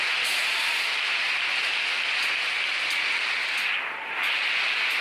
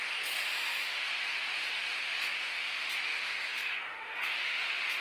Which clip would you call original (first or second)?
first